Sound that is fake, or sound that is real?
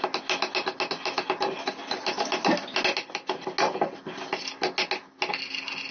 real